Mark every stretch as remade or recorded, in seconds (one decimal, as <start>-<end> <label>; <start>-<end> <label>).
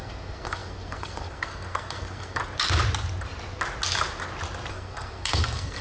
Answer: 0.0-2.4 remade; 2.4-4.7 recorded; 4.7-5.8 remade